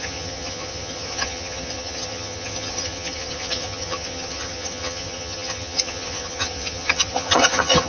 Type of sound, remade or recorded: remade